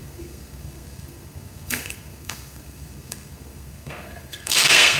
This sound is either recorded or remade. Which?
remade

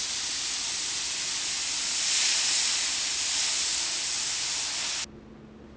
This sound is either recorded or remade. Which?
recorded